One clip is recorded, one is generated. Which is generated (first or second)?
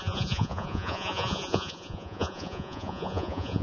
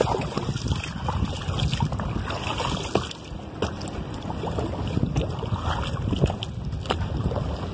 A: first